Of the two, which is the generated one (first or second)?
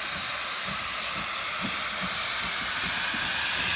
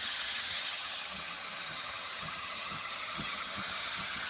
second